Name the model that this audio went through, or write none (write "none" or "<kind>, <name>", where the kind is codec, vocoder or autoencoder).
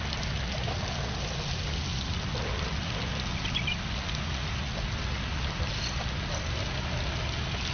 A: none